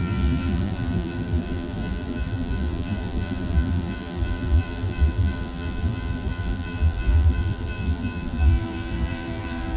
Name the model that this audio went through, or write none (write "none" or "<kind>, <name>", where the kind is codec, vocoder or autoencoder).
vocoder, BigVGAN v2